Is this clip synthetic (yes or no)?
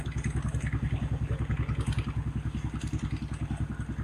no